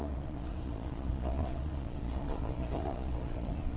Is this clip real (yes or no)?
no